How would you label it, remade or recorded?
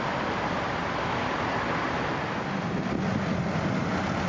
recorded